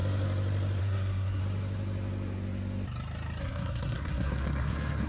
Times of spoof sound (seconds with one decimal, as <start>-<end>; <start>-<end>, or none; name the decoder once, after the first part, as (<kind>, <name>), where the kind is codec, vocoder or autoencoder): 0.8-1.4 (codec, SNAC); 3.4-5.1